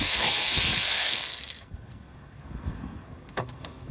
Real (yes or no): no